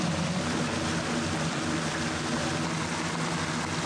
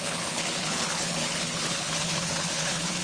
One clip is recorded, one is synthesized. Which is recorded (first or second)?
first